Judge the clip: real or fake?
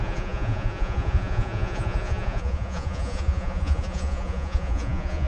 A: fake